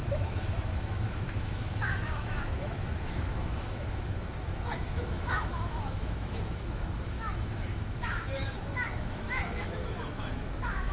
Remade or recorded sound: remade